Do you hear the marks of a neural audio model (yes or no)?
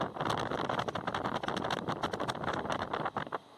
no